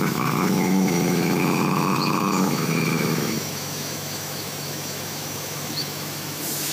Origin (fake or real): fake